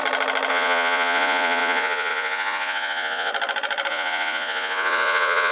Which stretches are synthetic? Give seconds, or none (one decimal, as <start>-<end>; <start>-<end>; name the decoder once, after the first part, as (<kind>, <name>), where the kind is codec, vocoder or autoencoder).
0.5-3.3 (vocoder, Vocos); 3.9-5.5